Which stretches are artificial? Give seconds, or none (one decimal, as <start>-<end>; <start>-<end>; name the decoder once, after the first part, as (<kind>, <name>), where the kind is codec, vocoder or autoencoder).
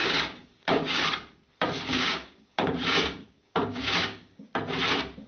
0.0-1.0 (codec, DAC); 1.9-4.5